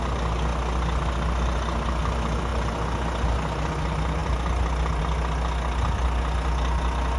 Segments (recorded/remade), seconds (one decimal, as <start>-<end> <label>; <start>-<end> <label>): 0.0-7.2 recorded